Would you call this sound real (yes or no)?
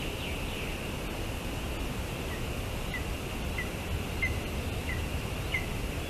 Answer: yes